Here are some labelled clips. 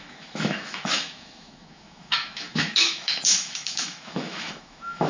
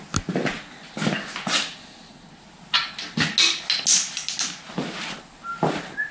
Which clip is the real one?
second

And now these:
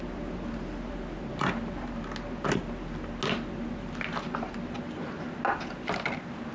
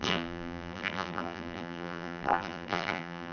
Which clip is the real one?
first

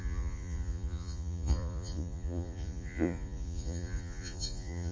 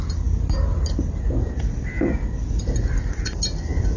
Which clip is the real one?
second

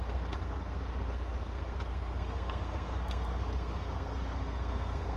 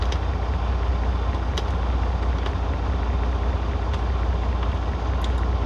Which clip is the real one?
second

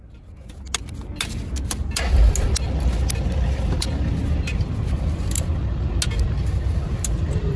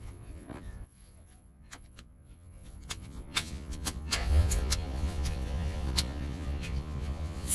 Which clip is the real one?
first